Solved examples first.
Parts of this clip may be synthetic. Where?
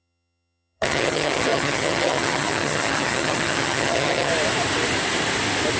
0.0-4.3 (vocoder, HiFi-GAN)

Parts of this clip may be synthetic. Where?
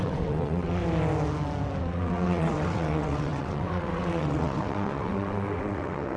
0.0-0.8 (vocoder, WaveNeXt); 1.8-6.2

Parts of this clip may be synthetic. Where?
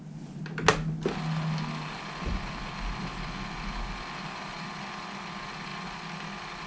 none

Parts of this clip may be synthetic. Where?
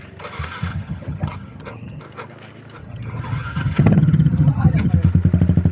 0.7-2.0 (vocoder, HiFi-GAN); 2.8-4.9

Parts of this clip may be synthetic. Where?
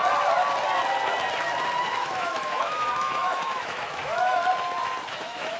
1.8-4.4 (autoencoder, DAC-VAE); 5.1-5.6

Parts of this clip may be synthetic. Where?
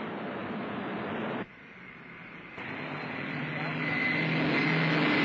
0.4-3.5 (vocoder, BigVGAN v2)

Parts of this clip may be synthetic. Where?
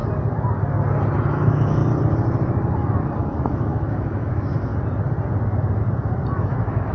1.3-1.8 (autoencoder, DAC-VAE); 3.2-4.7; 6.4-6.9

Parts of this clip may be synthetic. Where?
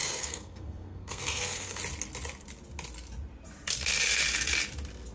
0.0-1.8 (codec, SNAC)